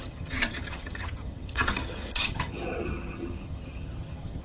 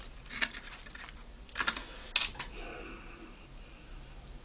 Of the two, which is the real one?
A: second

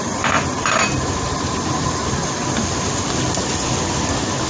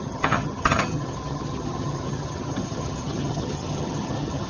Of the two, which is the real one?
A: first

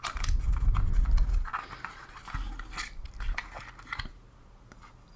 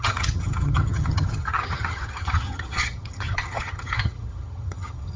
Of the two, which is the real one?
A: first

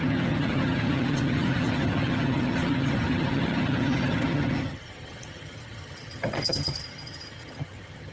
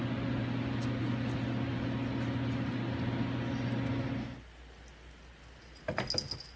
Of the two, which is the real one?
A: second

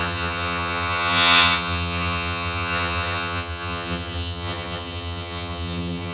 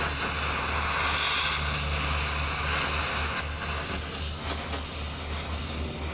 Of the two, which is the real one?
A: second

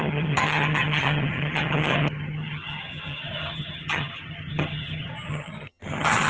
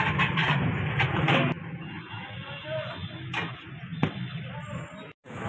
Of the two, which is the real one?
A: second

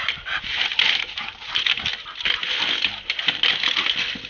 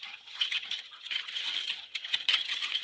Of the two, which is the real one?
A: first